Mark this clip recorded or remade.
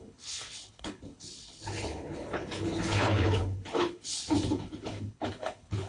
remade